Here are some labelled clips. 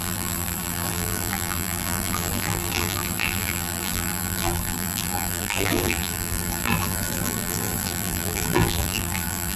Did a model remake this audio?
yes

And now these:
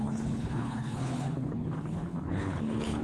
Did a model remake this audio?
yes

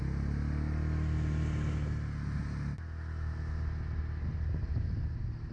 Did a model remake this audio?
no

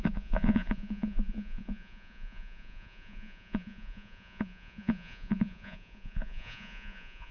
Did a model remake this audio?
yes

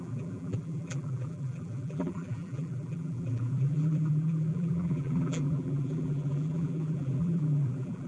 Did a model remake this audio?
yes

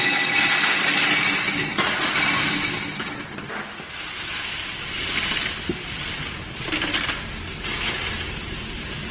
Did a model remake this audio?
no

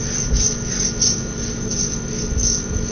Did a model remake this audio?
no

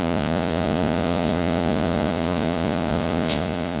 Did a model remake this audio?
yes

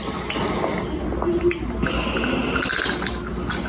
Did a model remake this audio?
no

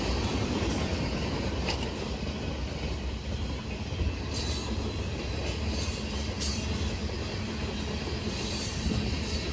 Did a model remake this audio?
no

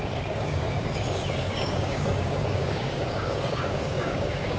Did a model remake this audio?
yes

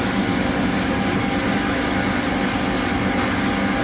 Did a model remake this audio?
no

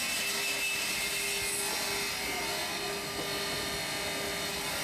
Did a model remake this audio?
no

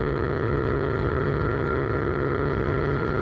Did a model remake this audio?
yes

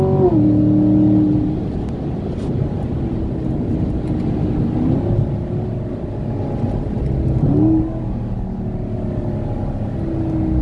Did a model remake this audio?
no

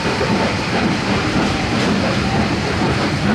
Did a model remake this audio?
yes